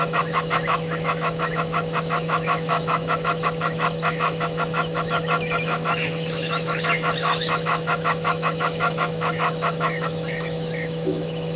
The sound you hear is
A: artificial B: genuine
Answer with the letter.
A